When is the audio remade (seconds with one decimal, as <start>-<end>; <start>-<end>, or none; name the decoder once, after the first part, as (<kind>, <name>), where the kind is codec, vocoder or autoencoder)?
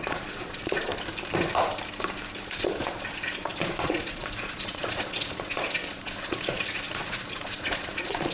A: 0.0-0.9 (vocoder, Vocos); 2.5-8.3